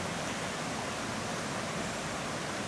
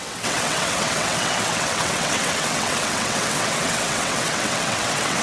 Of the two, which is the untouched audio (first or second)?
first